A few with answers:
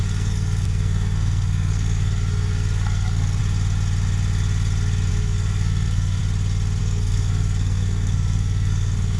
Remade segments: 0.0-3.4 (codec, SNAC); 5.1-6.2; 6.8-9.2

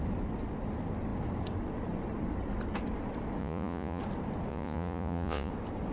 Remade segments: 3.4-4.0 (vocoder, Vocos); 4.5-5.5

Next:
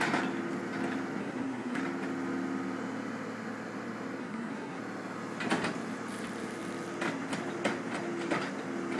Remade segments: 1.2-1.8 (codec, SNAC); 4.2-4.8

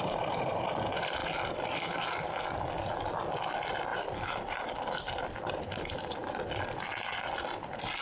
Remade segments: 0.0-1.2 (vocoder, BigVGAN v2); 3.1-6.2